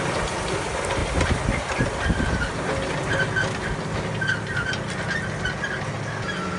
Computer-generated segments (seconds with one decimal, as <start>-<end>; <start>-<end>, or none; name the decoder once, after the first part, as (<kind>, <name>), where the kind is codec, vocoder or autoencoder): none